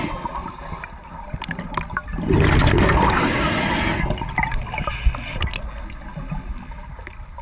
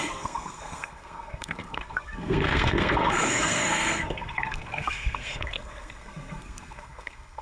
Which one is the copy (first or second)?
second